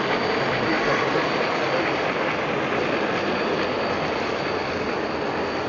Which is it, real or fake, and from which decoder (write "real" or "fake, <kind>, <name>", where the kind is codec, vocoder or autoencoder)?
real